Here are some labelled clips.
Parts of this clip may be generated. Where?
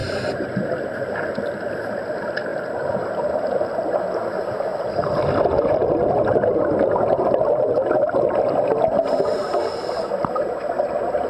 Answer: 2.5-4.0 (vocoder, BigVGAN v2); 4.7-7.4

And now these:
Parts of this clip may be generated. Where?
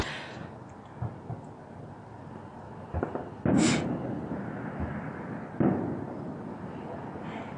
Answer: none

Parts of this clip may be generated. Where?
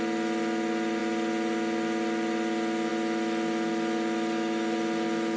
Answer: none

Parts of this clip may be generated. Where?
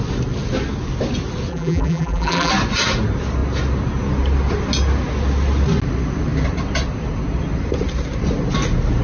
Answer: 1.5-2.5 (vocoder, BigVGAN v2)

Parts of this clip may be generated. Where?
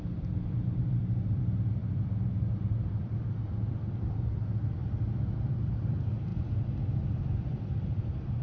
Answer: 0.0-4.8 (vocoder, BigVGAN v2); 5.5-8.4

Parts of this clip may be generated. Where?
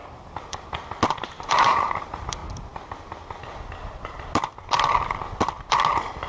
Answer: 1.2-2.4 (vocoder, BigVGAN v2)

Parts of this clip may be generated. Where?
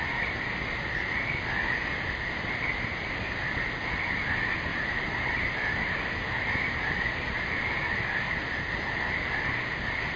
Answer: 2.7-3.2 (vocoder, BigVGAN v2); 4.7-7.4